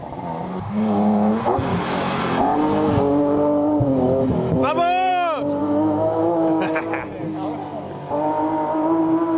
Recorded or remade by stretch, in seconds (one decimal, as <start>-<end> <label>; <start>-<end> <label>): 0.0-1.7 recorded; 1.7-2.2 remade; 2.2-3.9 recorded; 3.9-5.1 remade; 5.1-5.6 recorded; 5.6-6.8 remade; 6.8-9.4 recorded